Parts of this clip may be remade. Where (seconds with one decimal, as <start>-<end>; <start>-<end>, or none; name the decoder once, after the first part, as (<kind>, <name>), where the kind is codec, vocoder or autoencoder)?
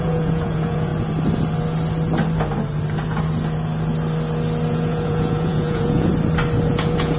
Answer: 0.0-0.9 (vocoder, Vocos); 4.7-6.1; 6.7-7.2